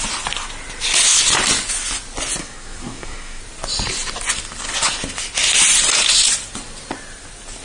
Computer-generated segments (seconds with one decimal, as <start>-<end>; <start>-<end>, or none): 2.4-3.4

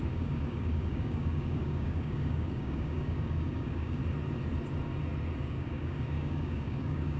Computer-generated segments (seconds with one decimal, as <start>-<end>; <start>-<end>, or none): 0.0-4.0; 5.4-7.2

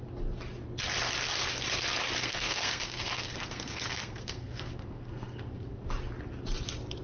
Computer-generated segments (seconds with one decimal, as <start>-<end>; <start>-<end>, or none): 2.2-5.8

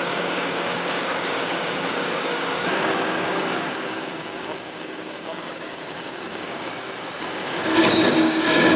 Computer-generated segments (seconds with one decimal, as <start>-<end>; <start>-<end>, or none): 0.0-6.7; 7.2-8.8

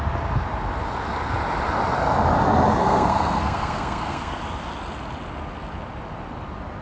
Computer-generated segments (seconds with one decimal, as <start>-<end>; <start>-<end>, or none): 2.8-4.4

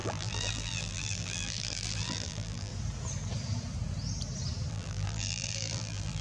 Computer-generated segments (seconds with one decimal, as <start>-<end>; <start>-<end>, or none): 0.0-2.7; 4.7-6.2

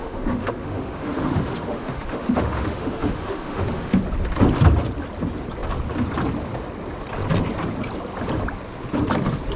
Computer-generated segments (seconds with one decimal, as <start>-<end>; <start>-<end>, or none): 0.0-4.0